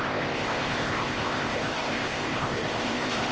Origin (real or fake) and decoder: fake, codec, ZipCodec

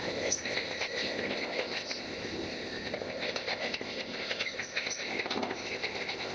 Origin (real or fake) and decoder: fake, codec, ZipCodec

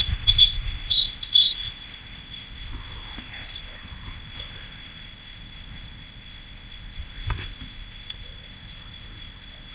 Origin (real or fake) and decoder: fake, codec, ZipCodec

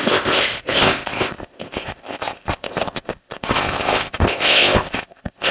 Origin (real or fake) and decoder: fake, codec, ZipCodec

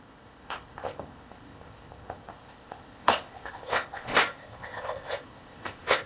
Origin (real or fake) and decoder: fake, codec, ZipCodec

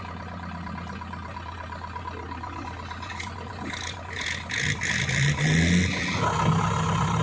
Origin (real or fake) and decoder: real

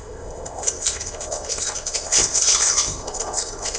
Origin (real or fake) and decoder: fake, codec, ZipCodec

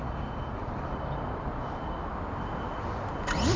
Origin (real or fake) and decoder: real